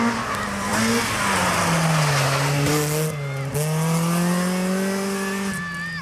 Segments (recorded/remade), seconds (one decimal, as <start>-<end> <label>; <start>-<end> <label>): 0.0-6.0 recorded